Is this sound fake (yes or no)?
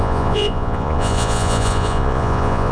yes